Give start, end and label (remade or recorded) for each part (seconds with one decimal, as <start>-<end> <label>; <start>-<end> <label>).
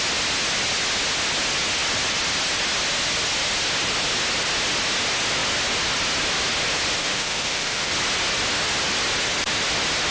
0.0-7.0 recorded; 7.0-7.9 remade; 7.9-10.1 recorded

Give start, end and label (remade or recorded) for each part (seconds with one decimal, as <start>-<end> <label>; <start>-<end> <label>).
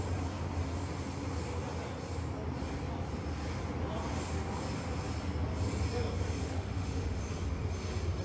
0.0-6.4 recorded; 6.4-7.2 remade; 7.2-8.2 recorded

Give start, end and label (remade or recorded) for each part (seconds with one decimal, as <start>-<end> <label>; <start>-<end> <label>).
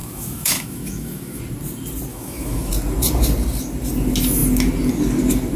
0.0-1.4 remade; 1.4-2.1 recorded; 2.1-2.7 remade; 2.7-5.6 recorded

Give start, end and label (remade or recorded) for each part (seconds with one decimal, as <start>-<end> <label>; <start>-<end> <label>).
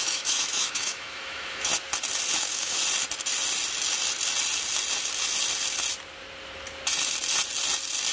0.0-1.7 remade; 1.7-2.4 recorded; 2.4-2.8 remade; 2.8-8.1 recorded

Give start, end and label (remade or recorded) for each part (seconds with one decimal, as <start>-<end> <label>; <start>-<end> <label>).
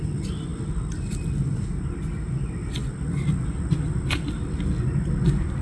0.0-5.6 recorded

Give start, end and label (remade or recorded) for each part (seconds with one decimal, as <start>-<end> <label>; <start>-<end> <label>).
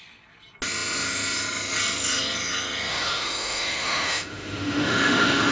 0.0-2.9 recorded; 2.9-5.5 remade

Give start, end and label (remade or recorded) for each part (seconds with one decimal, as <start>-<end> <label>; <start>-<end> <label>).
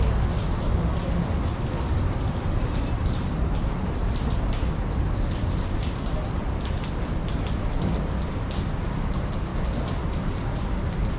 0.0-11.2 recorded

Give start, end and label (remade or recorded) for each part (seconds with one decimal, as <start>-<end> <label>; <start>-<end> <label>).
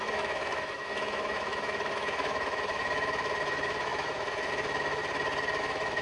0.0-5.0 remade; 5.0-5.6 recorded; 5.6-6.0 remade